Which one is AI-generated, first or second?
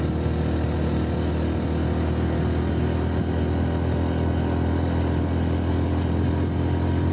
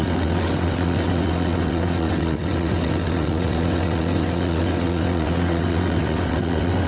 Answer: second